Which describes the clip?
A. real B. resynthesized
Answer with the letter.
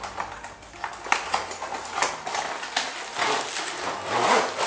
A